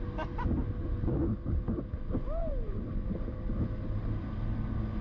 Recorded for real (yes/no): yes